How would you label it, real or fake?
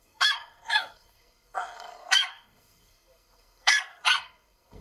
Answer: fake